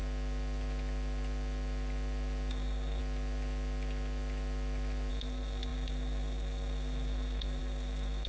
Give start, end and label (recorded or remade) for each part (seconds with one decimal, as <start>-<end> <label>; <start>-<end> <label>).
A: 0.0-2.5 recorded; 2.5-3.0 remade; 3.0-5.1 recorded; 5.1-8.3 remade